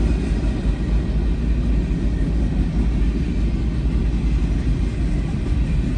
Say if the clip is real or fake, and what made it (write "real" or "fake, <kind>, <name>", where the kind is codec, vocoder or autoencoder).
real